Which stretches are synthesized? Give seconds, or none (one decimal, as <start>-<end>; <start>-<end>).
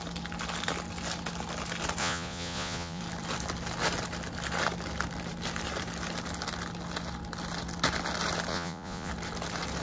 2.0-3.0; 8.5-9.1